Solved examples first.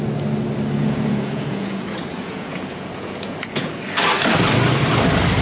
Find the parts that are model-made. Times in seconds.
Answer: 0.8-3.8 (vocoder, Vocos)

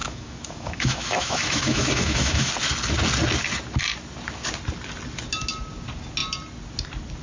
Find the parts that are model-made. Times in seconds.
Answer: 0.0-2.5 (autoencoder, DAC-VAE)

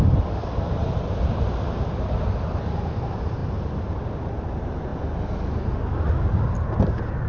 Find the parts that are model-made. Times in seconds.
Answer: none

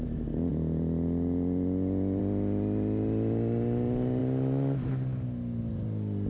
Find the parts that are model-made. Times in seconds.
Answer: none

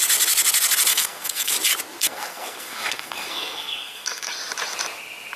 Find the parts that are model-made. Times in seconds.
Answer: 0.9-1.5 (codec, SNAC); 2.0-4.3